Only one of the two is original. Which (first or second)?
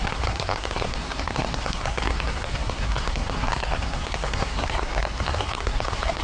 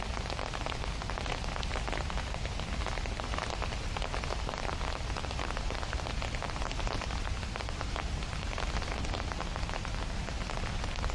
second